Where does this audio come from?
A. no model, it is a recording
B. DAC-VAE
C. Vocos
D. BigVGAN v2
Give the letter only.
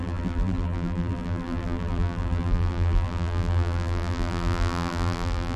D